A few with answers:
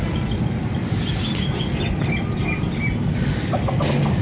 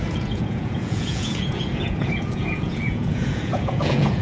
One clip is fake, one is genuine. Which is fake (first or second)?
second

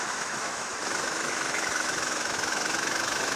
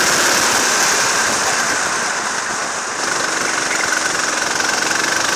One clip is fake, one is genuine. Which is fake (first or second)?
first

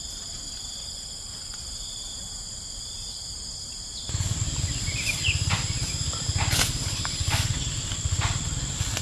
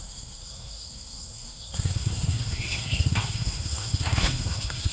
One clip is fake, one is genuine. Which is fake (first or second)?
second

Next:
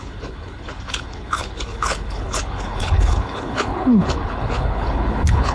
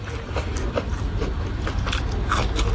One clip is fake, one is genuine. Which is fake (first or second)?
first